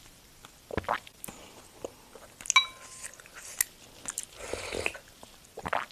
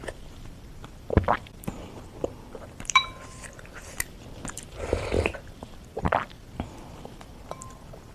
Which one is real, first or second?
first